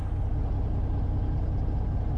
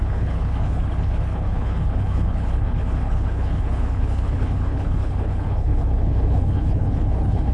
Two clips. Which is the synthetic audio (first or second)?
second